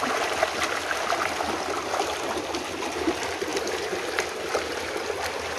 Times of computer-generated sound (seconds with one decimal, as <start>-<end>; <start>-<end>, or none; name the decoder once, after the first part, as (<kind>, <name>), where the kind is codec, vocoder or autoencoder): none

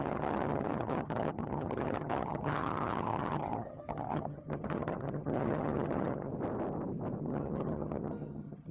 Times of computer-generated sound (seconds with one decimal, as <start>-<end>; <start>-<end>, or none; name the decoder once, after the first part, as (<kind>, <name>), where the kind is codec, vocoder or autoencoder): 0.0-6.3 (vocoder, HiFi-GAN); 7.2-8.7

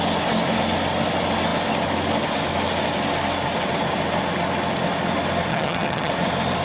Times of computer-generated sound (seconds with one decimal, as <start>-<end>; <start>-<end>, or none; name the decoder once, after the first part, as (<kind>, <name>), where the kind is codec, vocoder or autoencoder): 5.5-6.1 (vocoder, HiFi-GAN)